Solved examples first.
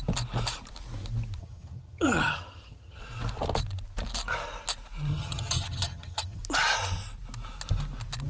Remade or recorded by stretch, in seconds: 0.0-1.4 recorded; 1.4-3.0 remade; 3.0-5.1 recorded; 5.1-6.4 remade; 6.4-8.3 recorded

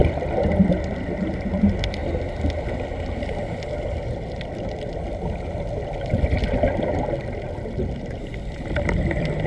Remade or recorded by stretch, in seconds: 0.0-0.9 remade; 0.9-9.5 recorded

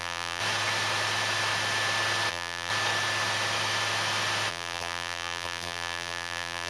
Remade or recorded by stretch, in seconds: 0.0-0.4 remade; 0.4-2.3 recorded; 2.3-2.7 remade; 2.7-4.5 recorded; 4.5-6.7 remade

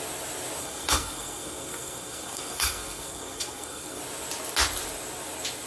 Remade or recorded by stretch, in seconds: 0.0-0.6 recorded; 0.6-4.0 remade; 4.0-5.7 recorded

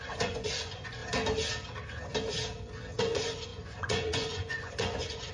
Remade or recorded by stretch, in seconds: 0.0-1.0 remade; 1.0-3.0 recorded; 3.0-5.3 remade